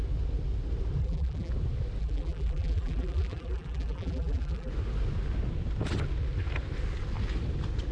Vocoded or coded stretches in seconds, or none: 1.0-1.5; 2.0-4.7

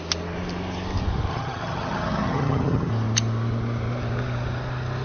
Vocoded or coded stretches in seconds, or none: 1.3-2.9

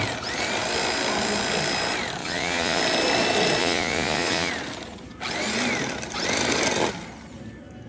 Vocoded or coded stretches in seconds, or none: 2.2-2.8; 3.6-4.5

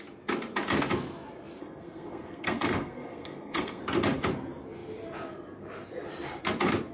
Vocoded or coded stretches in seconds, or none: 1.6-3.8

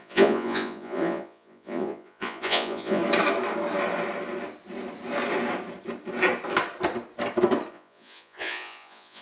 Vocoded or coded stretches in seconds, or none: 0.0-3.0; 7.7-9.2

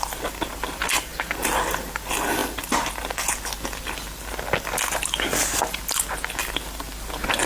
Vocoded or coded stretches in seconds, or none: none

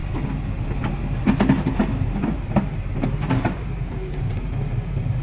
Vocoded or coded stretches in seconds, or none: 1.8-5.2